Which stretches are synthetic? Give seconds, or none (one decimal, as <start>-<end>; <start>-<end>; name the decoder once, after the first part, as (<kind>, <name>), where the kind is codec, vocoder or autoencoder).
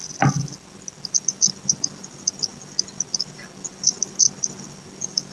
none